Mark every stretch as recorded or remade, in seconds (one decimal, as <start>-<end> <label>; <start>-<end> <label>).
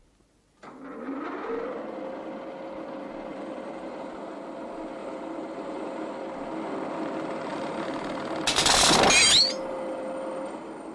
0.0-3.3 recorded; 3.3-4.1 remade; 4.1-5.0 recorded; 5.0-6.1 remade; 6.1-7.5 recorded; 7.5-8.2 remade; 8.2-10.9 recorded